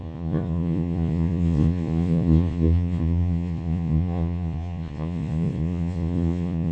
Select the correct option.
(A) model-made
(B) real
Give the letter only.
A